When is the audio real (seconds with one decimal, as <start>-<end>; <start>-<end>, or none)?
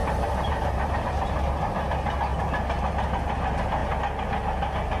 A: 1.4-5.0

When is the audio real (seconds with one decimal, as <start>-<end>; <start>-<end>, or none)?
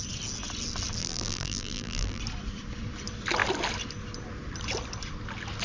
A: 0.0-1.0; 2.2-5.6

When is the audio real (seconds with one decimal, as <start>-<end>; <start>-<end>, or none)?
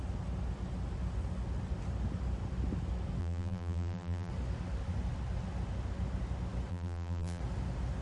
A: 0.0-3.2; 4.3-6.7; 7.4-8.0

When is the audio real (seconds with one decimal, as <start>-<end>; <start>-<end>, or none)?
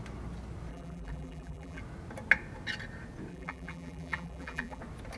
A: 0.0-0.7; 1.8-3.3; 4.8-5.2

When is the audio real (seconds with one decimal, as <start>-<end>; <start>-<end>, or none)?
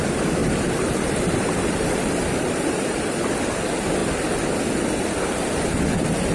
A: 0.0-0.4; 3.4-6.3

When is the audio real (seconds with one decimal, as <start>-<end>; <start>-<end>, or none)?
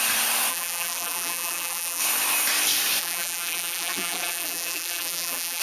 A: 0.0-0.5; 2.0-3.0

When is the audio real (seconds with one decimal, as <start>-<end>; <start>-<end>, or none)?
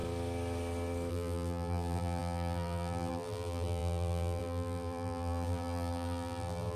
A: 0.0-1.1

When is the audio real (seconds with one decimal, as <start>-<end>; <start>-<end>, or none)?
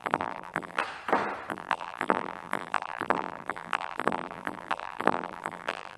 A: 0.8-1.5